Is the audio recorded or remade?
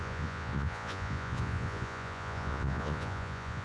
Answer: remade